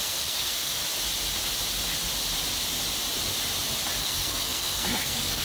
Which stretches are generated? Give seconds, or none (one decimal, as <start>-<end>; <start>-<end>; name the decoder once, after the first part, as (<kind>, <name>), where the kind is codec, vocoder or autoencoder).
0.0-0.8 (codec, SNAC); 4.0-5.4